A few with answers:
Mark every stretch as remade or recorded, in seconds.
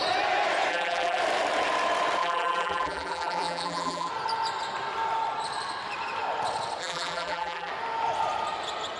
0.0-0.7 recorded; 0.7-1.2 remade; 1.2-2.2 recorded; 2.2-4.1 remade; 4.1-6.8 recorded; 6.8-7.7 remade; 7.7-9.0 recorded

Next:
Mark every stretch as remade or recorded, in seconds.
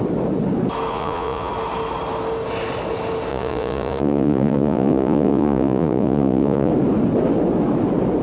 0.0-0.9 recorded; 0.9-1.5 remade; 1.5-3.3 recorded; 3.3-6.7 remade; 6.7-8.2 recorded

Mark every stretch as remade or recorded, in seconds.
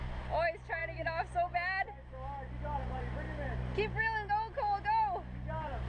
0.0-5.9 recorded